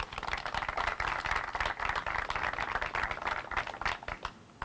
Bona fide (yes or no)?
yes